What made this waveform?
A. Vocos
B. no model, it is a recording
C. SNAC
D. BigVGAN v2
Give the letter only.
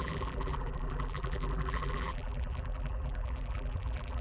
D